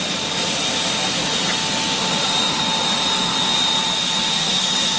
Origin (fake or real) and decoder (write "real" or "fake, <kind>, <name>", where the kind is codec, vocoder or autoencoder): real